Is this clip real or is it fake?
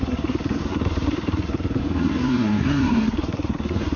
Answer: fake